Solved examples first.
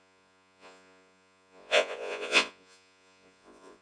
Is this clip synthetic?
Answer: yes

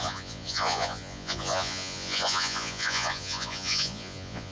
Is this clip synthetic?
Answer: yes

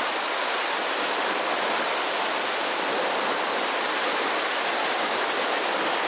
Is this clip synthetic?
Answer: no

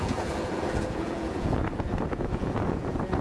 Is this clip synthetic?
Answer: yes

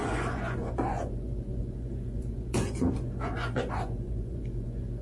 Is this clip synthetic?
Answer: yes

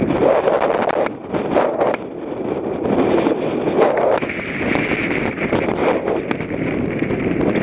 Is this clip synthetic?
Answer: no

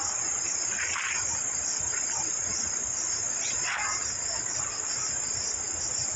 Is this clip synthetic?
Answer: no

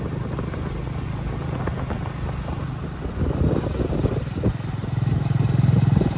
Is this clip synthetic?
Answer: no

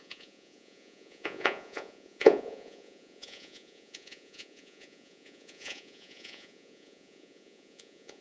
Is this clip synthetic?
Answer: yes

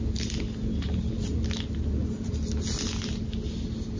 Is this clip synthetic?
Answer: no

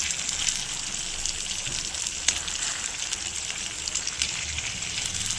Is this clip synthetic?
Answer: no